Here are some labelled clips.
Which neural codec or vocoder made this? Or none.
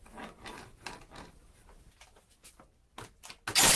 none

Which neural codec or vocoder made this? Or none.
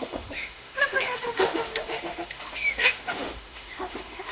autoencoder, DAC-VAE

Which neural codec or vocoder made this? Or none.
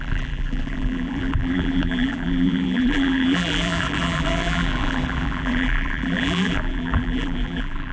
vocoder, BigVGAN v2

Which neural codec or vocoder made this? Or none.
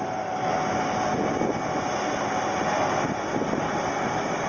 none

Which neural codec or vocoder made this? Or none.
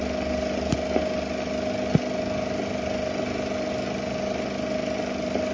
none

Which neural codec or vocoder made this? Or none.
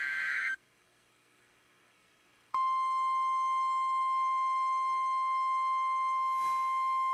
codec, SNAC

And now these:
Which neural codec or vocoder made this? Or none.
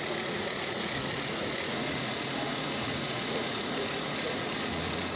vocoder, Vocos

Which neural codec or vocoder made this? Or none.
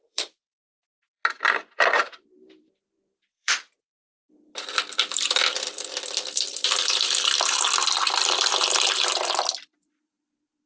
vocoder, BigVGAN v2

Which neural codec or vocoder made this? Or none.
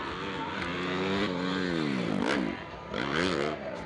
none